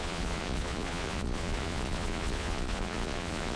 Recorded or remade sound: remade